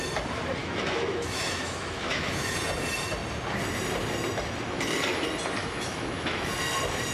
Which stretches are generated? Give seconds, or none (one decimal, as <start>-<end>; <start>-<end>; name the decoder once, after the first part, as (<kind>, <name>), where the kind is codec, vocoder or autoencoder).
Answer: 0.6-2.5 (autoencoder, DAC-VAE); 5.6-6.5